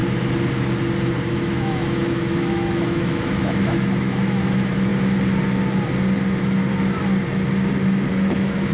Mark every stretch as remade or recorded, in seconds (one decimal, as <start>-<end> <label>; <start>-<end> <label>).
0.0-1.3 recorded; 1.3-4.9 remade; 4.9-8.1 recorded; 8.1-8.7 remade